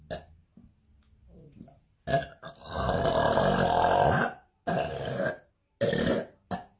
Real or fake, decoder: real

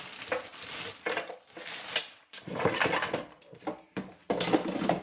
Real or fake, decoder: real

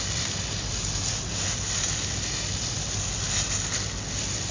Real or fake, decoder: real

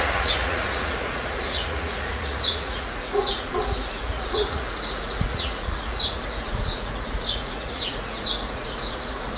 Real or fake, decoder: fake, vocoder, Vocos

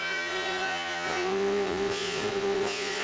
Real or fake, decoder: fake, vocoder, Vocos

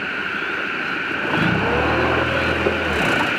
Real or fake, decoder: real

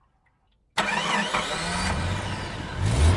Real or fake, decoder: real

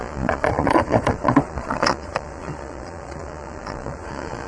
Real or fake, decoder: fake, vocoder, Vocos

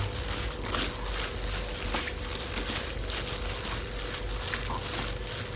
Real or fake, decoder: real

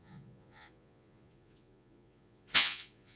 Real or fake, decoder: fake, vocoder, Vocos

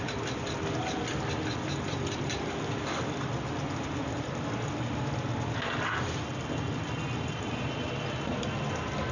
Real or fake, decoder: real